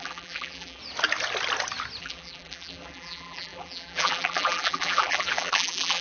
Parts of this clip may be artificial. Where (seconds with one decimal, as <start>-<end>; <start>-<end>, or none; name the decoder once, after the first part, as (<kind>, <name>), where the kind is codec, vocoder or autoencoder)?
0.0-0.8 (vocoder, BigVGAN v2); 2.0-6.0